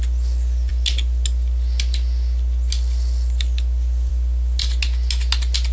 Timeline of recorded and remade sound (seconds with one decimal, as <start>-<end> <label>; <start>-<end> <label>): 0.0-5.7 recorded